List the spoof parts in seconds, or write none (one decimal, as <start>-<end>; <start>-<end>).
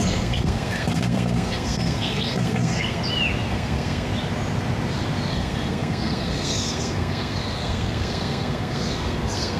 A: 0.0-3.0; 3.5-4.1; 5.3-9.6